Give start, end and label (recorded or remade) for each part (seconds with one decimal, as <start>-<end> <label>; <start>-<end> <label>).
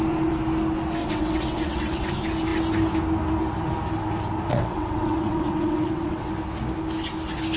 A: 0.0-1.0 recorded; 1.0-2.1 remade; 2.1-4.5 recorded; 4.5-6.3 remade; 6.3-7.6 recorded